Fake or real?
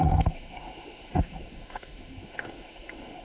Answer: fake